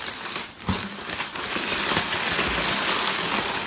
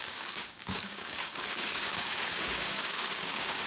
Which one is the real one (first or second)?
first